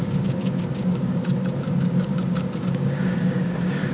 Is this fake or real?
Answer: fake